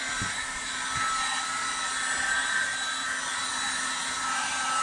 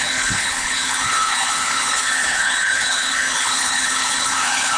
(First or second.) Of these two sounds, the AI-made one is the second